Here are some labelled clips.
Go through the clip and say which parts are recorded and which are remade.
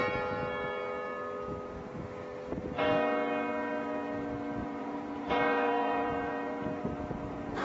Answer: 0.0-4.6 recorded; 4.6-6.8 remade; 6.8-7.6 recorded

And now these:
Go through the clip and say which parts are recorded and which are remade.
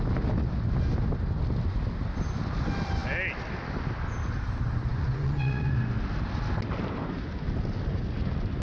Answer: 0.0-4.9 recorded; 4.9-5.8 remade; 5.8-8.6 recorded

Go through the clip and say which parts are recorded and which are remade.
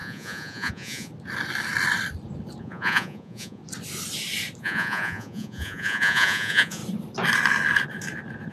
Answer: 0.0-1.1 remade; 1.1-2.6 recorded; 2.6-3.6 remade; 3.6-4.6 recorded; 4.6-6.8 remade; 6.8-8.5 recorded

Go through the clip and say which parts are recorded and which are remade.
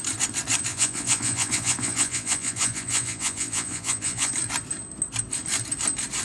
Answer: 0.0-0.7 recorded; 0.7-4.3 remade; 4.3-6.2 recorded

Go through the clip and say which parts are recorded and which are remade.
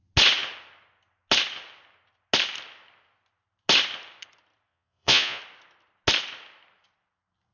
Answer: 0.0-4.7 recorded; 4.7-5.4 remade; 5.4-7.5 recorded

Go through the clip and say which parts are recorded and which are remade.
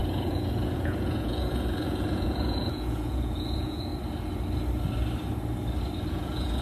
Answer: 0.0-3.9 remade; 3.9-6.1 recorded; 6.1-6.6 remade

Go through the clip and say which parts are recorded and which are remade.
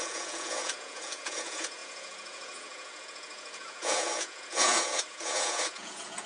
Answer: 0.0-6.3 remade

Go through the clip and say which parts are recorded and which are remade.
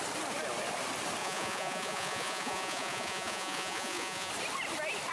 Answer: 0.0-1.2 recorded; 1.2-4.3 remade; 4.3-5.1 recorded